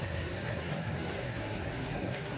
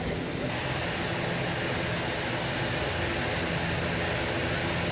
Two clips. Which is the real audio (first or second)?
second